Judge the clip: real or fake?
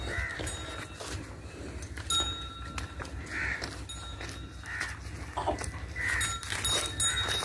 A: real